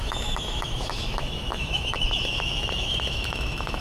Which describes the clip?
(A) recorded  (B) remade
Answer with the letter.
B